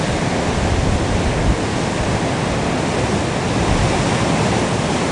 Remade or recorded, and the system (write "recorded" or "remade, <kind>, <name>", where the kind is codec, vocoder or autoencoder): recorded